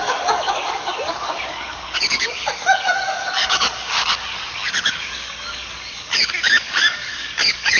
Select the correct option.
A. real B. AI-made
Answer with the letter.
B